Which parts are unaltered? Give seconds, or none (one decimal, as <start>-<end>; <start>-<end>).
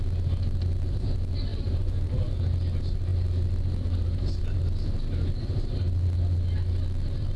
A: 0.0-1.5; 2.3-7.4